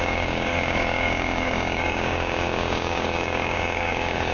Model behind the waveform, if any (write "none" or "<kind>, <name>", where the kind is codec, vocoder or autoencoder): codec, DAC